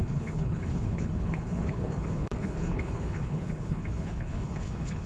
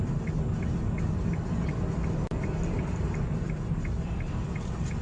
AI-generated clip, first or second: first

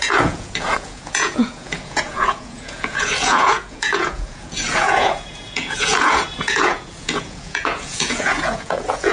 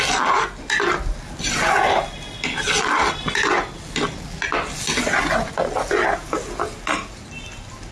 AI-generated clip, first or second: first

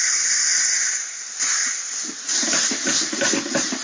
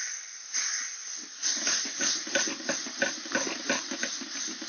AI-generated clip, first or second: first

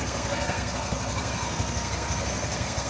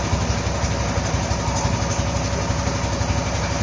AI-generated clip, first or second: first